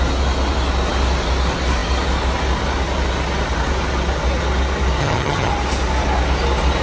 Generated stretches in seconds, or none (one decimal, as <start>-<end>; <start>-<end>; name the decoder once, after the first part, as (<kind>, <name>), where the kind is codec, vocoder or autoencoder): 5.0-5.5 (vocoder, HiFi-GAN)